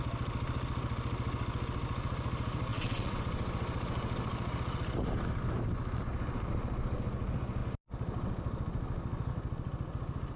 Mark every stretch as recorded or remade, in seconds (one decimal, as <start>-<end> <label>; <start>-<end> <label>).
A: 0.0-2.7 recorded; 2.7-3.2 remade; 3.2-10.4 recorded